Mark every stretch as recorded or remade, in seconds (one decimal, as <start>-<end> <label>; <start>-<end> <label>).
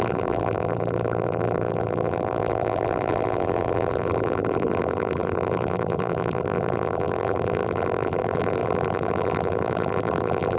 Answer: 0.0-10.6 remade